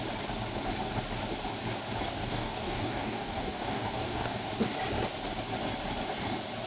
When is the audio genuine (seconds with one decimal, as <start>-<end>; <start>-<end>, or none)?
0.0-2.2; 4.5-6.7

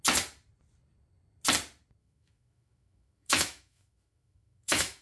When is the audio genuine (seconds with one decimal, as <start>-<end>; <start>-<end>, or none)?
0.0-2.0